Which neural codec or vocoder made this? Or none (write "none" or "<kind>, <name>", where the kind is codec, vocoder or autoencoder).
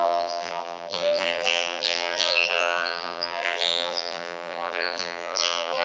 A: vocoder, BigVGAN v2